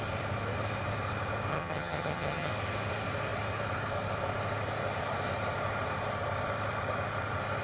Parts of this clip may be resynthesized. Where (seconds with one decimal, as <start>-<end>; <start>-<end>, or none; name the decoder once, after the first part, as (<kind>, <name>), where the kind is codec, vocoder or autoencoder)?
1.5-2.5 (vocoder, HiFi-GAN)